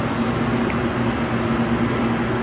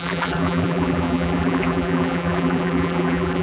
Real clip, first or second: first